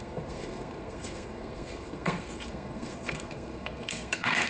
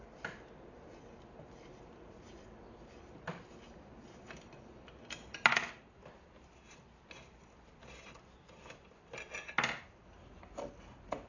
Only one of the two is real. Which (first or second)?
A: second